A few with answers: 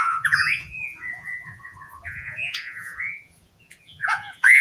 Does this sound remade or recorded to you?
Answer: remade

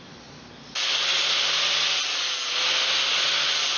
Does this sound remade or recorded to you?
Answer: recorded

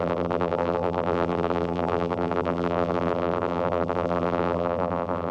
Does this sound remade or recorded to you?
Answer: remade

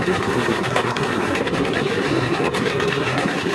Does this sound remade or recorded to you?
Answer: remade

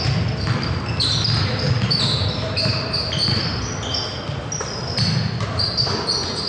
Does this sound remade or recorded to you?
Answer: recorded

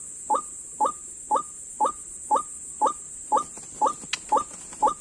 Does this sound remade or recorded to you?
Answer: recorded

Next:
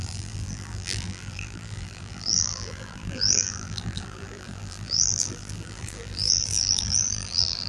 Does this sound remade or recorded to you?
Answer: remade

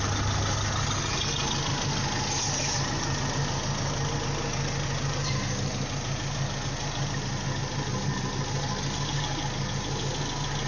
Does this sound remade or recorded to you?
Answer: recorded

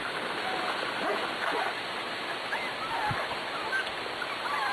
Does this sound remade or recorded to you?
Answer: recorded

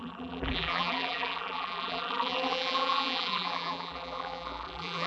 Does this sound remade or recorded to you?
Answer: remade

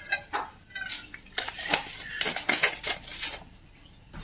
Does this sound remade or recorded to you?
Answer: recorded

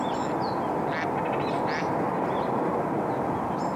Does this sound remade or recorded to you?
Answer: recorded